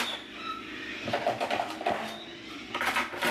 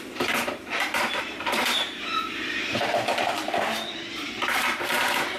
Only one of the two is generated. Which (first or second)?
second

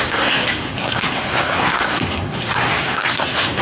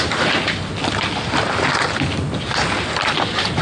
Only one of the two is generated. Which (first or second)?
first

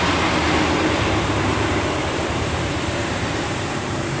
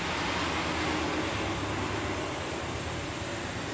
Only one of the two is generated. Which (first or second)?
first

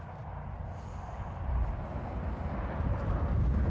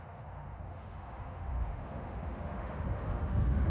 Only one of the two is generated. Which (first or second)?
second